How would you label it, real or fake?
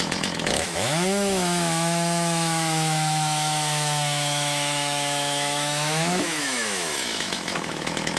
fake